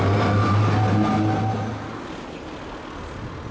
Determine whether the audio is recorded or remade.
recorded